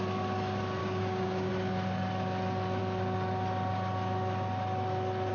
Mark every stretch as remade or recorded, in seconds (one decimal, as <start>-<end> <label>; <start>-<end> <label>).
0.0-0.8 recorded; 0.8-1.5 remade; 1.5-5.3 recorded